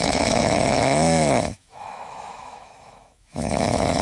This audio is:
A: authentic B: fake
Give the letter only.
B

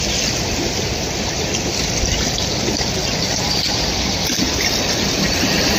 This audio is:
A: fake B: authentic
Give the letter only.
B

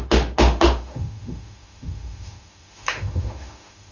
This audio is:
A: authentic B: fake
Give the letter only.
B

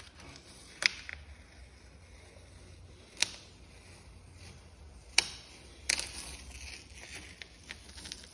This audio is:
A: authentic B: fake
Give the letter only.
A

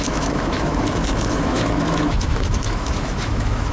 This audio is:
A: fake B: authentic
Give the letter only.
A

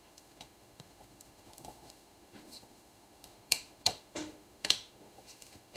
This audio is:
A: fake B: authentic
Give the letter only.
A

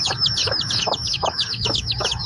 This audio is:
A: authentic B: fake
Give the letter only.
B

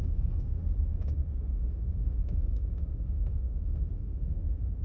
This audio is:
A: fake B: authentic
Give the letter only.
A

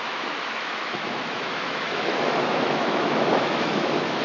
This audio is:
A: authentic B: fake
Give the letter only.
B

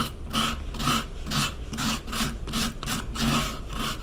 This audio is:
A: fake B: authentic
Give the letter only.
B